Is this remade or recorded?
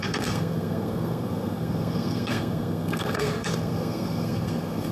remade